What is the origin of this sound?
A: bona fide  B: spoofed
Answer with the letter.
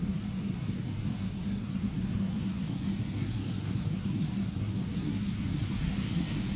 B